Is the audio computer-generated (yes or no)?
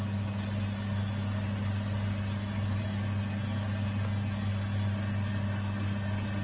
no